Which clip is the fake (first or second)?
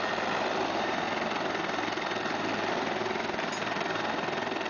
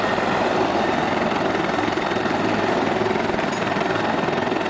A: second